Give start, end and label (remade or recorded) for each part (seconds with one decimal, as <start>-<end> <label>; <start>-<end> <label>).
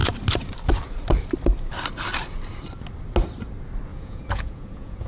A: 0.0-3.9 recorded; 3.9-5.1 remade